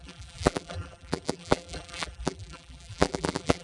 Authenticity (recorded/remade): remade